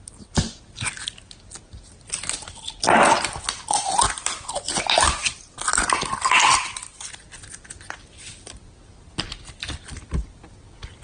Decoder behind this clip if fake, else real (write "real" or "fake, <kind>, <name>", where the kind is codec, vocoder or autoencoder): real